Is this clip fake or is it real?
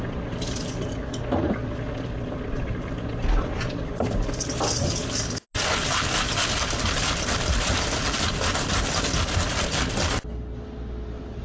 real